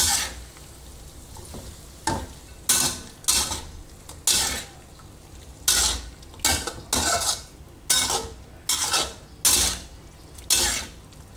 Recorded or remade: recorded